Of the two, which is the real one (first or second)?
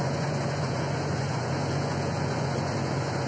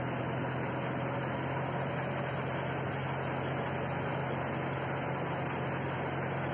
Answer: second